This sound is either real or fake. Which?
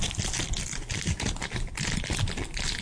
real